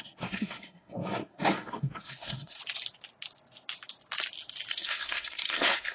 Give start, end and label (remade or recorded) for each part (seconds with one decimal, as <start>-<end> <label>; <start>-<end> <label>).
0.0-2.6 remade; 2.6-4.7 recorded; 4.7-5.9 remade